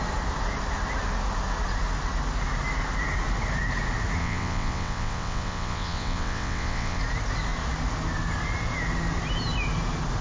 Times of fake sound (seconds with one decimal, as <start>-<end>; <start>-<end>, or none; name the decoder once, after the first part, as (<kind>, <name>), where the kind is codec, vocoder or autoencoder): 4.2-7.0 (vocoder, WaveNeXt)